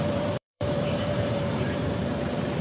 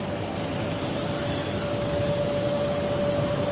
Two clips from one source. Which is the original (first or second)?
second